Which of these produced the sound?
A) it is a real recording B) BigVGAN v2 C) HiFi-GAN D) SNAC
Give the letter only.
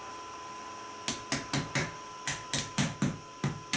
A